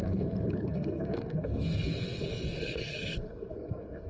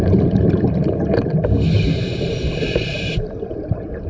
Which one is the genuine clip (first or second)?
second